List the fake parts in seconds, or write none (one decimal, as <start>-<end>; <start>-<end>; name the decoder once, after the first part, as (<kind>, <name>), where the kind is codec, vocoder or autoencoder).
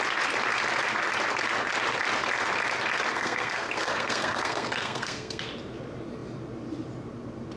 3.1-5.5 (codec, SNAC)